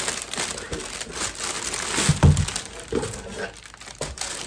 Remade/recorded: recorded